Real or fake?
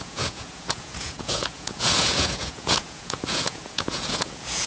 fake